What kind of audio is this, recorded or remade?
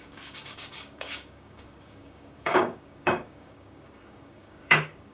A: remade